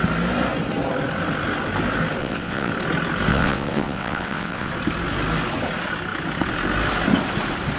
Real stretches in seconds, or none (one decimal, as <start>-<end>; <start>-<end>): 0.0-2.2; 2.7-3.3; 4.7-7.8